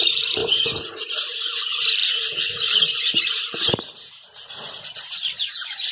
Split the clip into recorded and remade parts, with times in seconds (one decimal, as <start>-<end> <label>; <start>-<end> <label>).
0.0-0.4 remade; 0.4-1.0 recorded; 1.0-5.9 remade